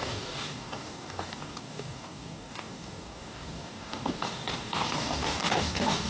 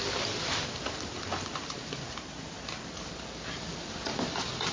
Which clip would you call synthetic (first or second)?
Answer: first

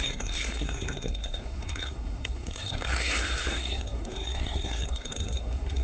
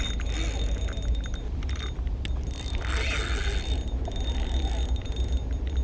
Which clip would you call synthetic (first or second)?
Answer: first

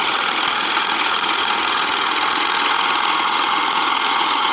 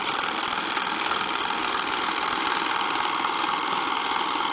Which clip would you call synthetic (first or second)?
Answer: first